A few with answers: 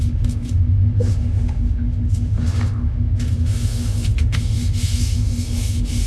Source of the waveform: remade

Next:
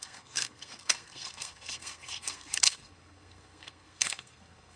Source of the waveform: remade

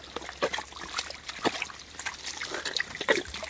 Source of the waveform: recorded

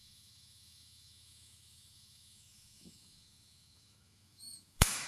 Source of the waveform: remade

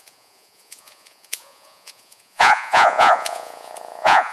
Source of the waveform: remade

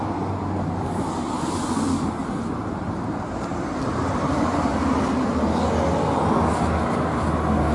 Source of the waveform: recorded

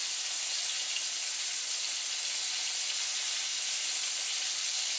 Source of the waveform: recorded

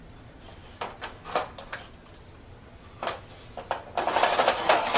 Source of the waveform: recorded